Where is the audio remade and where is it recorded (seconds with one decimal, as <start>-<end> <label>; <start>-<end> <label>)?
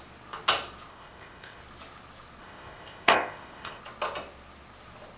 0.0-0.9 recorded; 0.9-1.6 remade; 1.6-2.4 recorded; 2.4-3.8 remade; 3.8-5.2 recorded